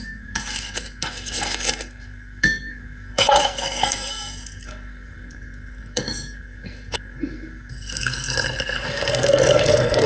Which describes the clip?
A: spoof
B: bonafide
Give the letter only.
A